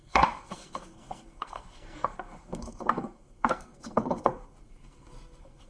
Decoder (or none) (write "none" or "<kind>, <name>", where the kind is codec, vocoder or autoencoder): codec, SNAC